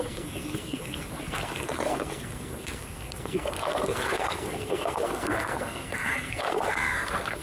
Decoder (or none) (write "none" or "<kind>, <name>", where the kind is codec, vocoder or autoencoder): codec, SNAC